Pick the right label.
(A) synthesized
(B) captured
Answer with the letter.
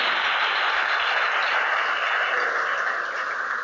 B